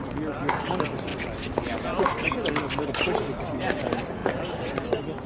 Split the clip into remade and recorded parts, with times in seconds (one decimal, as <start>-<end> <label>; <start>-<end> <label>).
0.0-5.3 recorded